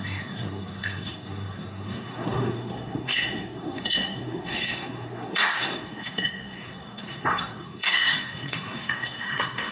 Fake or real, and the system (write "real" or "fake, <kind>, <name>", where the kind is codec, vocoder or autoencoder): fake, codec, SNAC